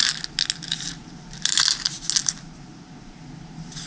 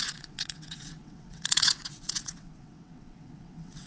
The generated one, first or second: second